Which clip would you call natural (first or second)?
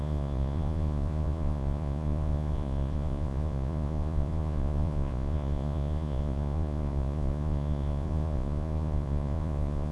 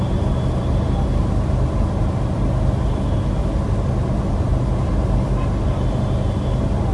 second